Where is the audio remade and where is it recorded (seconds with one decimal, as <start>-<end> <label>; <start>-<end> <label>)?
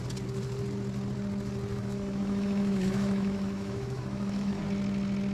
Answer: 0.0-1.7 recorded; 1.7-4.6 remade; 4.6-5.3 recorded